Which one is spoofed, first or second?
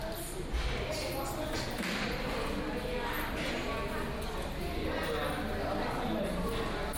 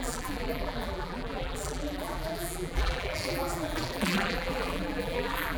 second